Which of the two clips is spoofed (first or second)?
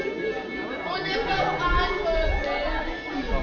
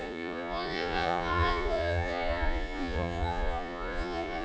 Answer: second